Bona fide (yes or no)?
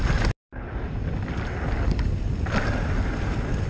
yes